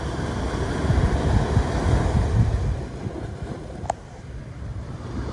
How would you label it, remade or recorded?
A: recorded